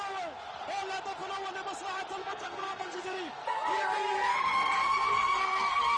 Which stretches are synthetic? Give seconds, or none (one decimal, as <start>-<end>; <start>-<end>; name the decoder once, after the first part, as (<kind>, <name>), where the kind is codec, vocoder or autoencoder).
2.2-3.0 (codec, SNAC); 4.1-6.0